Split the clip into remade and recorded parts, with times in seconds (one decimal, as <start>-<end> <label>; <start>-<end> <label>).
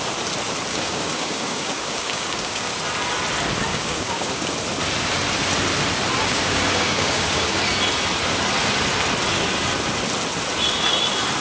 0.0-0.7 recorded; 0.7-2.7 remade; 2.7-3.7 recorded; 3.7-4.4 remade; 4.4-6.2 recorded; 6.2-7.6 remade; 7.6-11.4 recorded